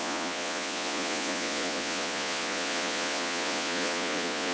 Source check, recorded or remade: remade